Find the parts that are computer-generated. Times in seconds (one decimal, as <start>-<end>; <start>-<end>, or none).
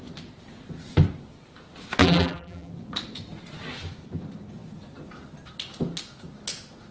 2.0-2.7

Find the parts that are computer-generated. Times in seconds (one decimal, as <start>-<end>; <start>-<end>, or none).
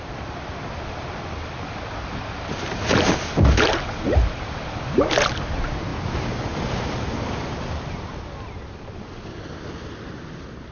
none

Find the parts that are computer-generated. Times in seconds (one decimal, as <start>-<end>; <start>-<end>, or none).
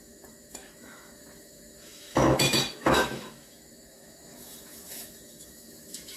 0.0-6.2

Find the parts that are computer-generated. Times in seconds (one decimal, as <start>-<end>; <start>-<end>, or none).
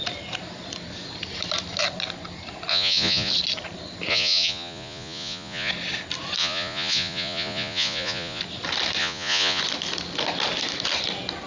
2.7-3.3; 4.1-5.7; 6.4-8.4; 9.0-9.6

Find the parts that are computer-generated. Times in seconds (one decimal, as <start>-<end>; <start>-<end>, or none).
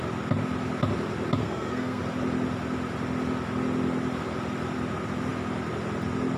1.4-2.0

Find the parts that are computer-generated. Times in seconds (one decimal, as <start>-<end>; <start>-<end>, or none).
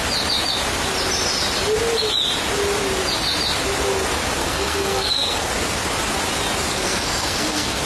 4.4-5.5; 6.7-7.8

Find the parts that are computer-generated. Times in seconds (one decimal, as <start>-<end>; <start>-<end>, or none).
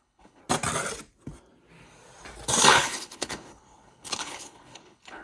0.0-0.4; 2.7-5.2